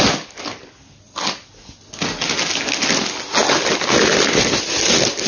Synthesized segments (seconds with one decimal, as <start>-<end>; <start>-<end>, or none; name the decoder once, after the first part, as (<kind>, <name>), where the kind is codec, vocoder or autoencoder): none